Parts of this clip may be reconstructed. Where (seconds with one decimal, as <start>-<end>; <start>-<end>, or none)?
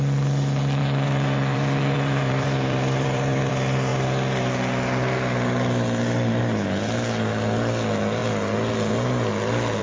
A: 0.8-3.5